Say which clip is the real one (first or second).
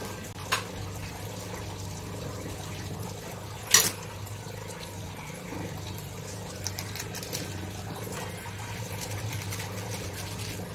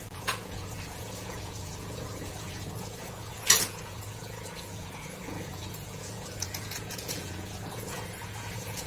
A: first